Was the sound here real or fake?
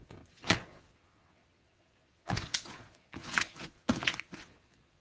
fake